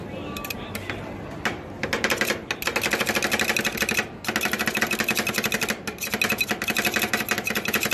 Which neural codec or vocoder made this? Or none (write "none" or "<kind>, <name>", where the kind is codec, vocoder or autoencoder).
none